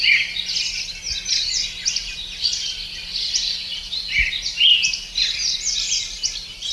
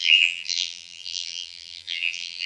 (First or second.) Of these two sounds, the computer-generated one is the second